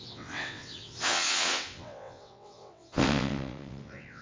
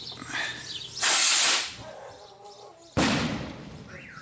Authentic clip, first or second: second